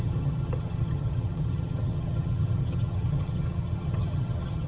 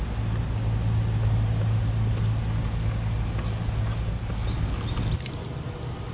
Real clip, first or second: second